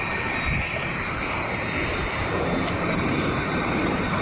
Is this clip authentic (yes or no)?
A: no